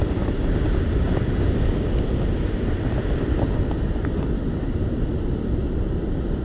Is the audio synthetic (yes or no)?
no